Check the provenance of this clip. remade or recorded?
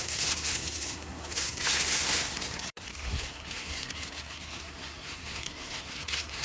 remade